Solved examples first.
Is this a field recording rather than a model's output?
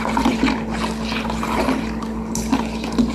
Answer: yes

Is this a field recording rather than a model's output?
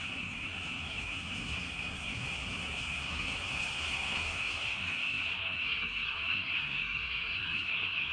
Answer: no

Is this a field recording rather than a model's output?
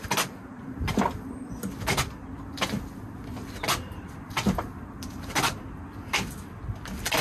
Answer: yes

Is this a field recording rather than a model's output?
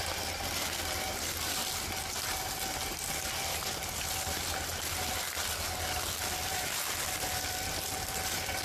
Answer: yes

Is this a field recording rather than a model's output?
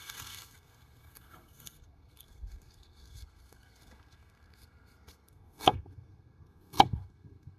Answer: no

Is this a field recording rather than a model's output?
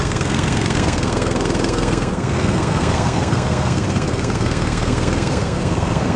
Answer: no